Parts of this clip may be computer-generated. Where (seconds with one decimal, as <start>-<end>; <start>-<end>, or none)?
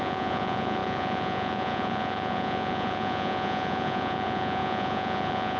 0.0-5.6